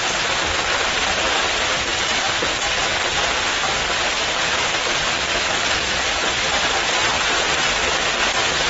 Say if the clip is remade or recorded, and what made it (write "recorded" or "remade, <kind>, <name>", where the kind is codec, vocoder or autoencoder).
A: recorded